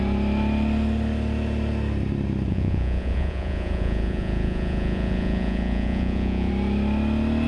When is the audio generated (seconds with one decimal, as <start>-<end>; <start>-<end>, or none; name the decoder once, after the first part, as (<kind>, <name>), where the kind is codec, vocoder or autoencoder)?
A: 2.5-6.5 (vocoder, Vocos)